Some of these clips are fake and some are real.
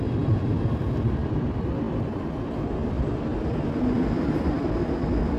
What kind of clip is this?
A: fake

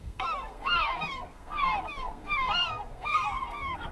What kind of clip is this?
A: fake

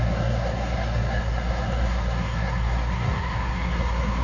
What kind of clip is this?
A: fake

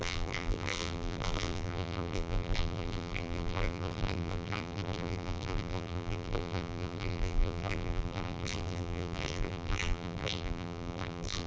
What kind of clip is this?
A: fake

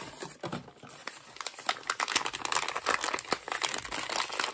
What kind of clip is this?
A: real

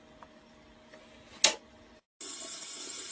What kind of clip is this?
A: real